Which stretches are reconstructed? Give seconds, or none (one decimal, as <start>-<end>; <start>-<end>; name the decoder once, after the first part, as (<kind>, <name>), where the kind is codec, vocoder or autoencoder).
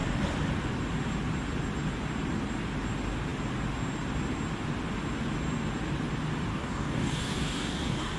6.5-8.2 (codec, DAC)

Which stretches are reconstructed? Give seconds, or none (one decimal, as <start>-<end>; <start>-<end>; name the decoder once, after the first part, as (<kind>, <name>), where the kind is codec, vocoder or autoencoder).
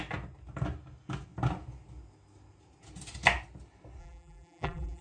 4.0-5.0 (vocoder, BigVGAN v2)